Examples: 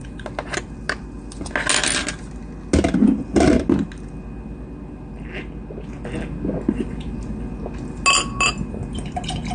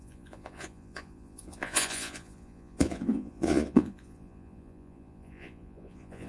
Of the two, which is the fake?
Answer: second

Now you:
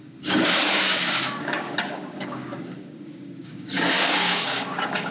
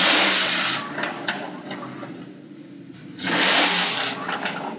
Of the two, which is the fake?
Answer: first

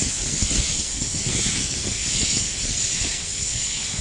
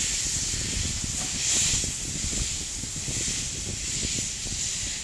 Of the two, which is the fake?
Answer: first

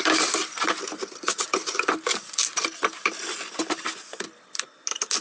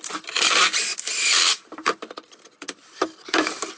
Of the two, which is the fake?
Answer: second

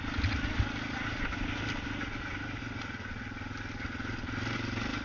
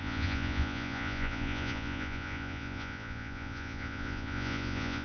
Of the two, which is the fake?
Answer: second